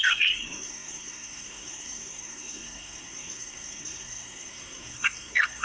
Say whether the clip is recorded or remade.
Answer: remade